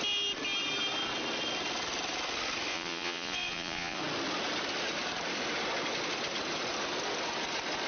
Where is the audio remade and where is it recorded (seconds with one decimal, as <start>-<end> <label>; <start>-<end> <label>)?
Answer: 0.0-2.7 recorded; 2.7-4.0 remade; 4.0-7.9 recorded